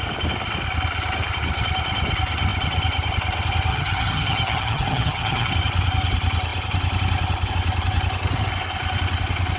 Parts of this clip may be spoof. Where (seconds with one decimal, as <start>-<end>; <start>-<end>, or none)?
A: 3.7-5.5